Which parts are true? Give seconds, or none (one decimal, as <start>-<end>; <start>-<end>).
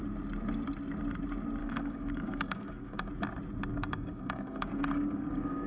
0.0-1.6; 3.1-3.7